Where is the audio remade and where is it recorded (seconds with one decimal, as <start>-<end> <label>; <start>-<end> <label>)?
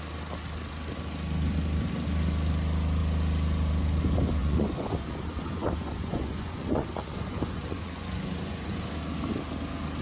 0.0-4.4 recorded; 4.4-8.8 remade; 8.8-10.0 recorded